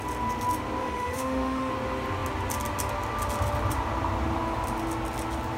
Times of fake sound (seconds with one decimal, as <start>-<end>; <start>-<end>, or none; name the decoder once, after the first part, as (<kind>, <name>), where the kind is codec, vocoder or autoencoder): 0.8-1.7 (autoencoder, DAC-VAE)